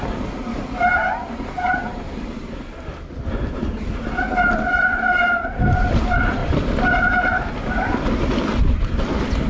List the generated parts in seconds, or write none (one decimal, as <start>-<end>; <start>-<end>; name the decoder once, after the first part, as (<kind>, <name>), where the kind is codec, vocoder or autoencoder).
none